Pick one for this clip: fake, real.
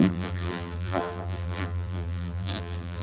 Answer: fake